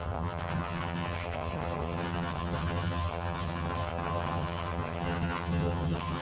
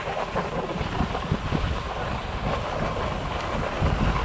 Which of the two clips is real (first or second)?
second